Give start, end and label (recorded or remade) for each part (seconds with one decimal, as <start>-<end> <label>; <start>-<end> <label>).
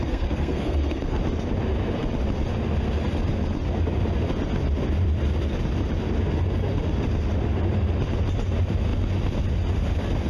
0.0-1.2 remade; 1.2-10.3 recorded